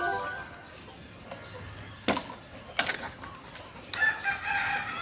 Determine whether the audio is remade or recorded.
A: recorded